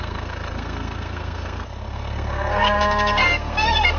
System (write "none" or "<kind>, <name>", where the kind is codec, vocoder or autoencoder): codec, SNAC